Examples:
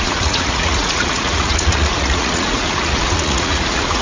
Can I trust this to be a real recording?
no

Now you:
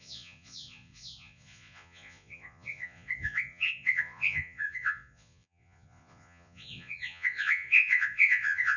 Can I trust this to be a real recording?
no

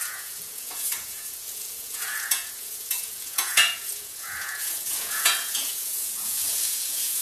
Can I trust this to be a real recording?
no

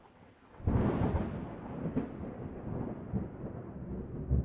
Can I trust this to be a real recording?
yes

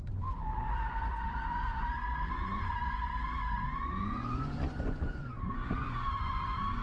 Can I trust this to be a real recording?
no